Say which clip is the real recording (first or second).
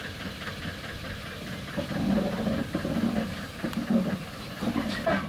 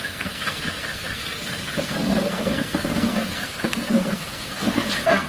first